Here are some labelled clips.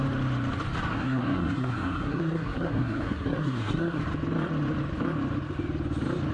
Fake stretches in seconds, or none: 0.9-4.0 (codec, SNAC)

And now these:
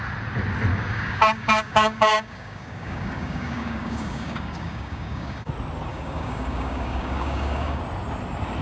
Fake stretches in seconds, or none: 0.7-5.5 (codec, DAC); 5.9-7.8

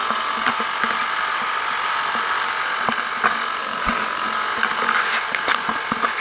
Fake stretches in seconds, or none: none

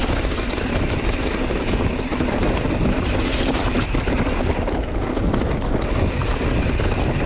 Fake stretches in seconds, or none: none